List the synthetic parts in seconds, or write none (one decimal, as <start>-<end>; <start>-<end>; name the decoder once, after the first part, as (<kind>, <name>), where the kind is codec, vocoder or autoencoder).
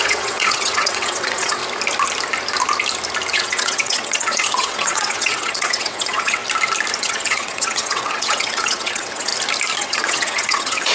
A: 0.0-1.6 (vocoder, WaveNeXt); 3.3-6.4; 7.0-9.3; 9.8-10.9